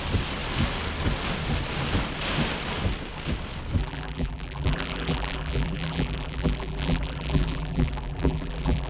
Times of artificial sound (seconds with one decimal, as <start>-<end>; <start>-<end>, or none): 3.8-8.9